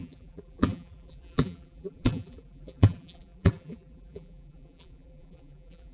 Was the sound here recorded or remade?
remade